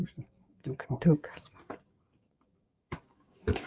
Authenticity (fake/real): fake